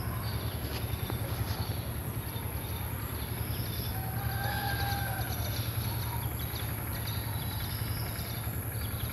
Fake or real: real